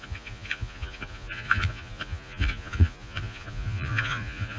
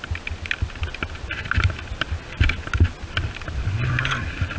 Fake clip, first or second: first